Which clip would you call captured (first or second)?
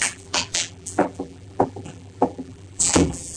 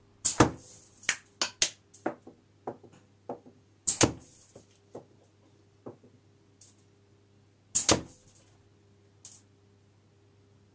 second